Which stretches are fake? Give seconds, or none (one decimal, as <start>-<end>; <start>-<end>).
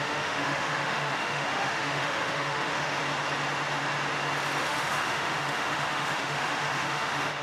0.0-3.0; 4.6-7.4